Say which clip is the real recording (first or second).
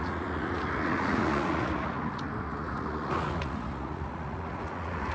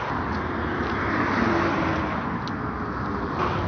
second